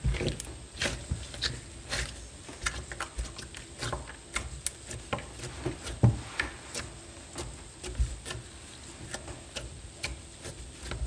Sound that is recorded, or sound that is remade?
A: recorded